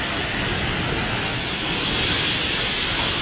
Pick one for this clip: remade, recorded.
recorded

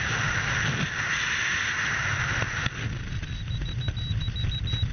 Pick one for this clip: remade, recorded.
recorded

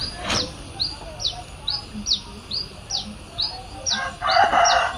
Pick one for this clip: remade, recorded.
remade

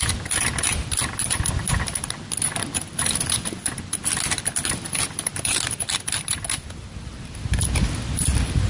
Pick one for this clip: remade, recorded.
recorded